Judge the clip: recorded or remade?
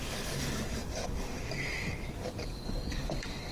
remade